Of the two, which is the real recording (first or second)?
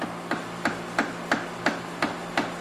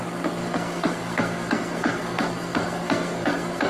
first